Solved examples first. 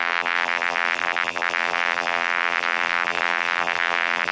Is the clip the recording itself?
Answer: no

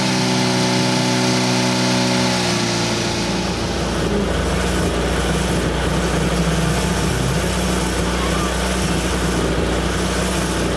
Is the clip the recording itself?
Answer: yes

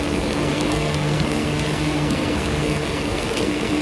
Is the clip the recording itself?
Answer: no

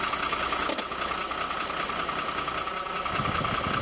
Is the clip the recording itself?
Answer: yes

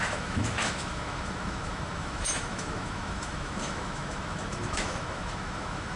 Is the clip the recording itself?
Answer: no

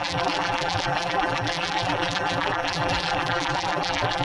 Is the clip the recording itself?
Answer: no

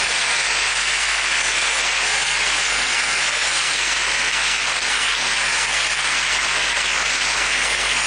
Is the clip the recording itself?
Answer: no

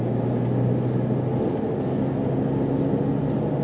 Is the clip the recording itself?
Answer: yes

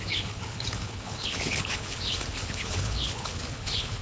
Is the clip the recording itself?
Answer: no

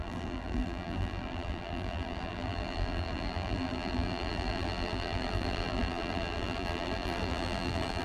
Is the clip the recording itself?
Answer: no